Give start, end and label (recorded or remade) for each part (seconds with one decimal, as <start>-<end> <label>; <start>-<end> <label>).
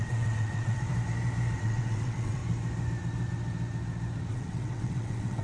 0.0-0.9 remade; 0.9-1.6 recorded; 1.6-2.4 remade; 2.4-4.3 recorded; 4.3-5.4 remade